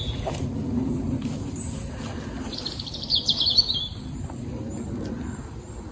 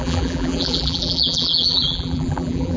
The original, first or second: first